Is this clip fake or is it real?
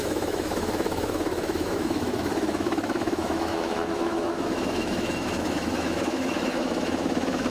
fake